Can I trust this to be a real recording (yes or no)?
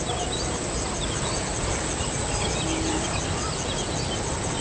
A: yes